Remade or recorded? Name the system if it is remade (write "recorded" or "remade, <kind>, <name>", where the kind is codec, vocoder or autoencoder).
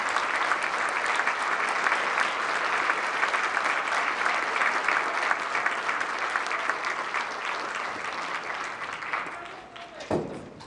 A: recorded